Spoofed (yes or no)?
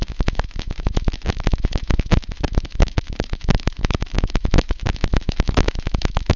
yes